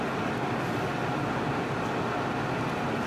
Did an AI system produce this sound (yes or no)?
no